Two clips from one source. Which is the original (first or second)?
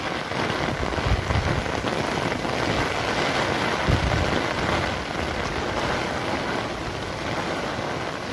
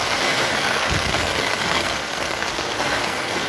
first